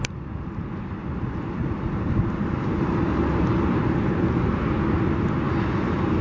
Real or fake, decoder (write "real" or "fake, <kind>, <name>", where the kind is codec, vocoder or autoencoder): real